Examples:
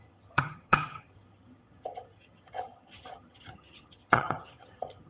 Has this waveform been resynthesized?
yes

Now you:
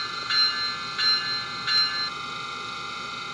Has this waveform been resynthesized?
no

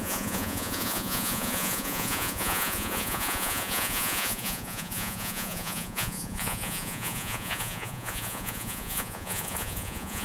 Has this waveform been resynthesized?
yes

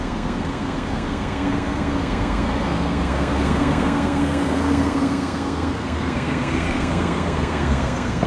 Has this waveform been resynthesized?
yes